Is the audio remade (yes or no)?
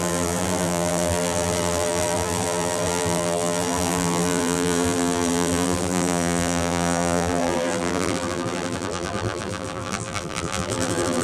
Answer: yes